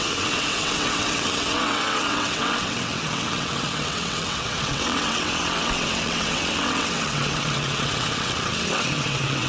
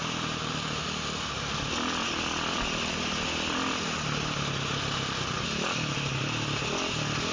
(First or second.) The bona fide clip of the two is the second